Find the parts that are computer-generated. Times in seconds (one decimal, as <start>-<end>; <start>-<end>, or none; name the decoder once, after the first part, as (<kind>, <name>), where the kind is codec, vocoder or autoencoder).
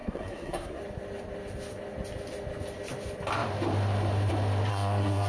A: 0.0-0.8 (codec, SNAC); 4.7-5.3